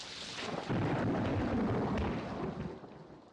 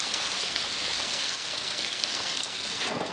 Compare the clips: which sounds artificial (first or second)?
second